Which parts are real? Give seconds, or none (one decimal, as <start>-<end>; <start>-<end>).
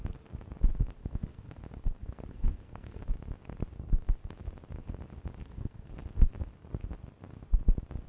0.0-1.0; 1.6-2.0; 3.0-5.4; 5.9-8.1